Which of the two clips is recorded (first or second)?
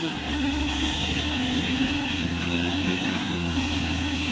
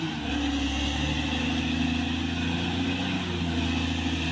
second